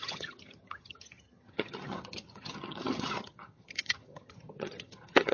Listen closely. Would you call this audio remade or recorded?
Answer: remade